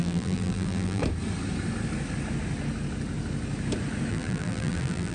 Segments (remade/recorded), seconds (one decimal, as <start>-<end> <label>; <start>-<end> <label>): 0.0-1.0 remade; 1.0-4.1 recorded; 4.1-5.1 remade